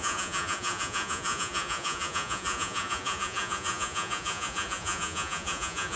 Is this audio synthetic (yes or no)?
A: yes